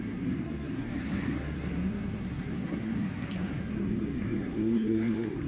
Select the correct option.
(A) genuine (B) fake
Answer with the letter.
B